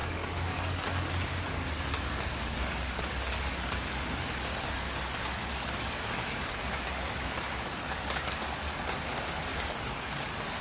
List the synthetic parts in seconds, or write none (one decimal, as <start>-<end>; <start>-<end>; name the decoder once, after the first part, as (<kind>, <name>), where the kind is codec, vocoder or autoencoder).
0.0-10.6 (codec, DAC)